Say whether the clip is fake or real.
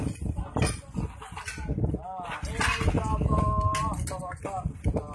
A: real